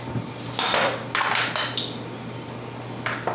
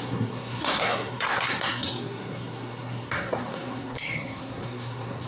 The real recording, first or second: first